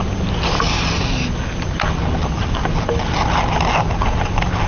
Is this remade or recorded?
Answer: recorded